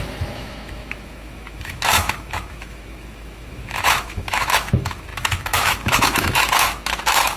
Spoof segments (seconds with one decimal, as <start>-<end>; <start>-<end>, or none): 0.0-7.4